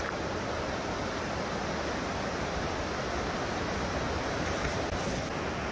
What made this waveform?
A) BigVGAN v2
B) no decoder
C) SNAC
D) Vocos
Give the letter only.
B